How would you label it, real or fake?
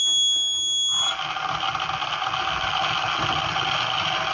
real